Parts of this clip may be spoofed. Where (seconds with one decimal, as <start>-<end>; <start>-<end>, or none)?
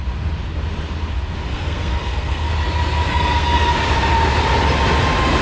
1.5-2.5; 3.1-3.7